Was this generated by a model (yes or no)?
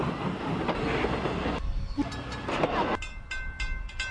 no